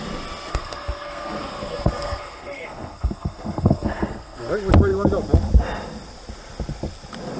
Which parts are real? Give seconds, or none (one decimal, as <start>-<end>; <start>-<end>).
0.0-0.5; 4.5-7.4